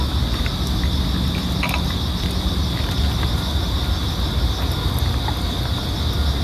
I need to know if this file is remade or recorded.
recorded